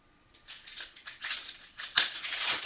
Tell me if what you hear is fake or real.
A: fake